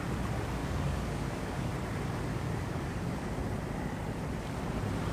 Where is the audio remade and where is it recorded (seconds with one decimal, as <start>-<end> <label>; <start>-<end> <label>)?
0.0-0.6 recorded; 0.6-1.7 remade; 1.7-2.3 recorded; 2.3-3.3 remade; 3.3-5.1 recorded